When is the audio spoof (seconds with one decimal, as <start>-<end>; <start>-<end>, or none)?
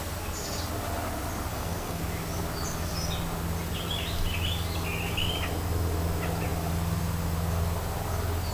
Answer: 1.5-2.0